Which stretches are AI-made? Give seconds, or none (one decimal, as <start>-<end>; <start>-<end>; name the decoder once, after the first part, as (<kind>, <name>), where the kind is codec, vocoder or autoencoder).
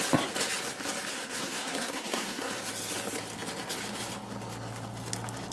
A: 1.1-2.5 (codec, SNAC)